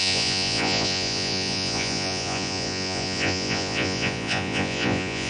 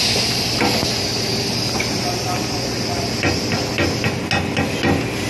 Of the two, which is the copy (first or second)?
first